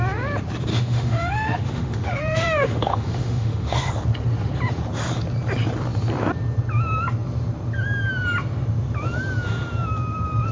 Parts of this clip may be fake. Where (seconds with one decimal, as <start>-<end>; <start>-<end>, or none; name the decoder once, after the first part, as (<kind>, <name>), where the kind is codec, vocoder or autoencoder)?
0.7-3.9 (autoencoder, DAC-VAE)